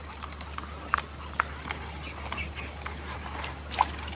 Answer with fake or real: real